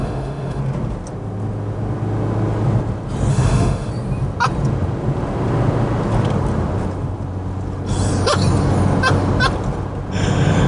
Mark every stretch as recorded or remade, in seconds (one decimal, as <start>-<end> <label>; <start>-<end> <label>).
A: 0.0-0.6 remade; 0.6-3.3 recorded; 3.3-3.9 remade; 3.9-10.7 recorded